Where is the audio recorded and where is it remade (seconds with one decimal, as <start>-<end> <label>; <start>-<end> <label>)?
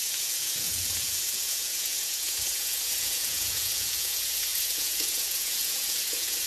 0.0-6.5 remade